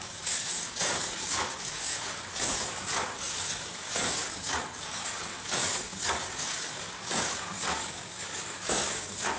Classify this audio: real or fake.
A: fake